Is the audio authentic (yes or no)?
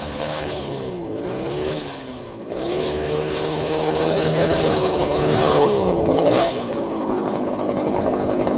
no